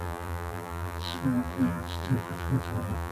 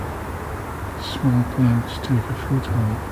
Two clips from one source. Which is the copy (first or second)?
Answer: first